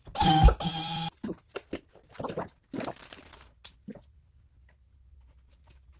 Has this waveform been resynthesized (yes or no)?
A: no